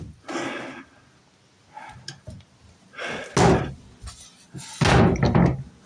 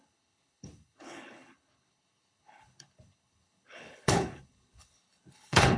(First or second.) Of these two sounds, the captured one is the first